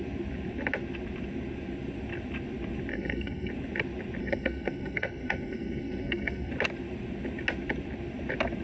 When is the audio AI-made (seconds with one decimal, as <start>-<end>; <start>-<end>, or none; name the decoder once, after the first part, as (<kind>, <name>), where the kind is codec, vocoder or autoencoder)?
2.9-3.5 (codec, SNAC); 4.2-6.5